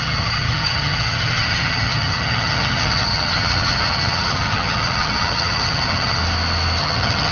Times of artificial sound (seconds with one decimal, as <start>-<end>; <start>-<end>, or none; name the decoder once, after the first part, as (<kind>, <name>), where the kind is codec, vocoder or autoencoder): 0.0-6.2 (vocoder, HiFi-GAN); 6.8-7.3